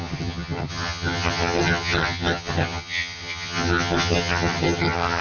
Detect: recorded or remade remade